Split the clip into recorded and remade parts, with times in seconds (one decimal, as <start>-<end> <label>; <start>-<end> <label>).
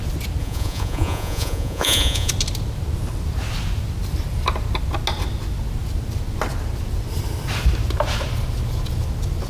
0.0-0.4 recorded; 0.4-2.3 remade; 2.3-9.5 recorded